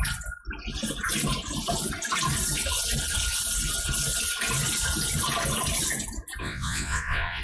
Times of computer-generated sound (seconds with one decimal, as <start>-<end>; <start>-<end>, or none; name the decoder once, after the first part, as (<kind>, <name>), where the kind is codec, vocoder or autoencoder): 6.4-7.4 (vocoder, WaveNeXt)